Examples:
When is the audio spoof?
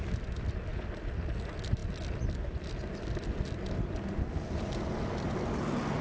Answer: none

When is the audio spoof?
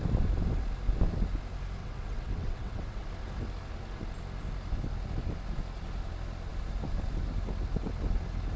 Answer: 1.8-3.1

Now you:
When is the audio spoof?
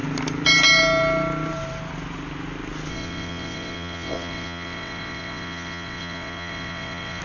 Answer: 2.9-7.2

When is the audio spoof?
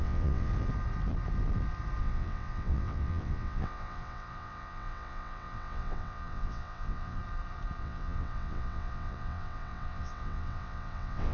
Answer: 0.0-0.5; 2.0-7.2; 7.8-11.3